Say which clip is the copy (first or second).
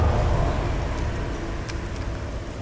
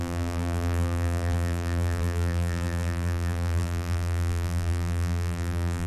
second